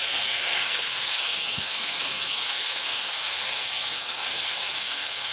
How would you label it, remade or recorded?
remade